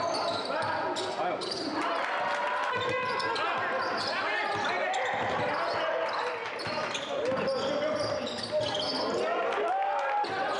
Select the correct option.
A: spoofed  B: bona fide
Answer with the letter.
B